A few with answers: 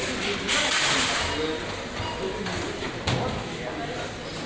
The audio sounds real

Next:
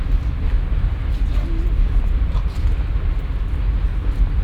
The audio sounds real